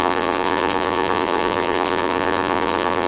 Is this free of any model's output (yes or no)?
no